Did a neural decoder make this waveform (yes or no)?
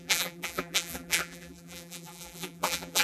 yes